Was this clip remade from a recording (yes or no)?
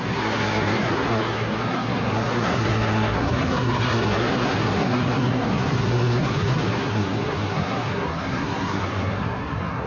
yes